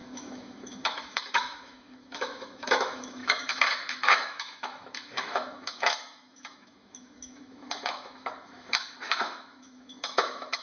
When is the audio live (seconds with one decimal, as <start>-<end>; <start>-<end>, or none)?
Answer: none